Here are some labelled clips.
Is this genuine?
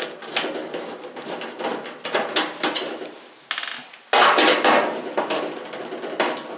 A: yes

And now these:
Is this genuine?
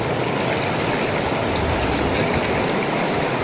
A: yes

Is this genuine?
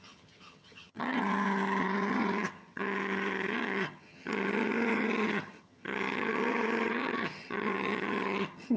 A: no